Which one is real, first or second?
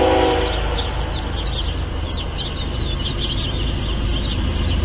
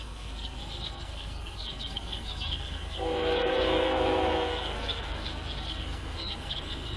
first